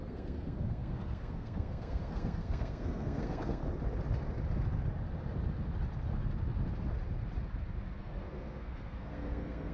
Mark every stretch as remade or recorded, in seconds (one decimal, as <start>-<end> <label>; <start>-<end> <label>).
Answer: 0.0-3.6 remade; 3.6-8.0 recorded; 8.0-9.7 remade